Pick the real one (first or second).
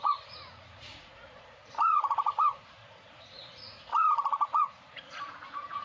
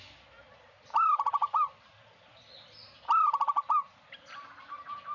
second